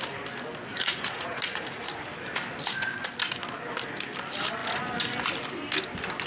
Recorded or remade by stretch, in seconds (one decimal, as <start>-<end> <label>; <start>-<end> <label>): 0.0-0.7 recorded; 0.7-1.9 remade; 1.9-6.3 recorded